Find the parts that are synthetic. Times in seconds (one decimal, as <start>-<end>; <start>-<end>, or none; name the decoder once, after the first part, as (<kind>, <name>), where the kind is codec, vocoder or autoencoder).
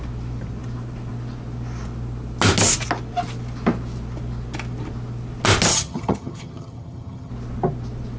5.7-7.3 (vocoder, HiFi-GAN)